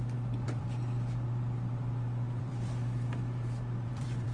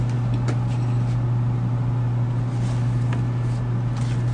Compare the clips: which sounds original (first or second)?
second